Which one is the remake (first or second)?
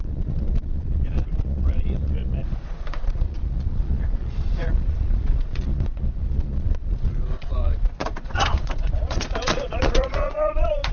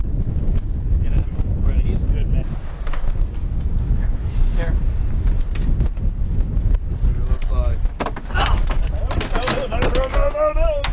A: first